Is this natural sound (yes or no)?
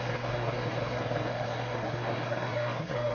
no